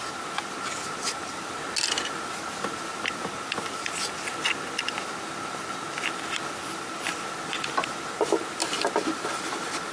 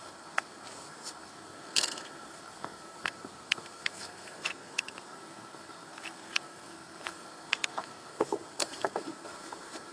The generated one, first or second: second